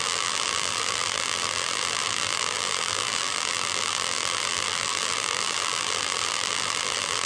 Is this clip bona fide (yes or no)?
no